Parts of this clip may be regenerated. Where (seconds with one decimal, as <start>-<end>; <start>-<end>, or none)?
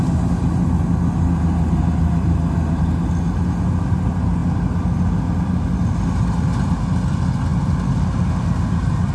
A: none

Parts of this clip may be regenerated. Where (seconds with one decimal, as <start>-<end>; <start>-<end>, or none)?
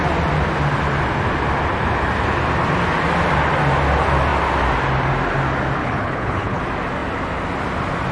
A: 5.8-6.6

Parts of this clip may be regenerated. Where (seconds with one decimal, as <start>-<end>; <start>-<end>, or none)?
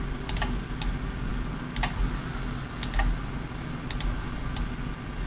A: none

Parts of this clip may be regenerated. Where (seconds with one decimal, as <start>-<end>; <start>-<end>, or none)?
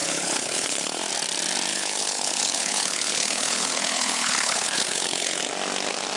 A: 0.0-1.0; 1.7-5.4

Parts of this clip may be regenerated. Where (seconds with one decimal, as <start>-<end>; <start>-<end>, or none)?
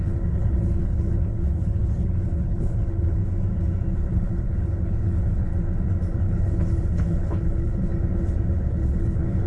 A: 0.0-3.2; 4.1-5.5; 6.2-7.9; 8.7-9.5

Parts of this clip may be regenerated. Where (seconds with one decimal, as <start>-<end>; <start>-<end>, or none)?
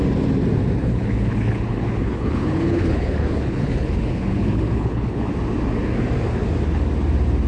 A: 0.8-5.3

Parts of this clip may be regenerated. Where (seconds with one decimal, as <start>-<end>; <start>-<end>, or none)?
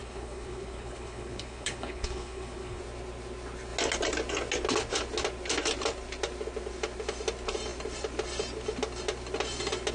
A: 0.0-2.8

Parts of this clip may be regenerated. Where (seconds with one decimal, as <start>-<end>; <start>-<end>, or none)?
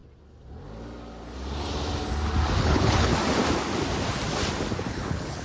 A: 2.6-3.1; 4.9-5.4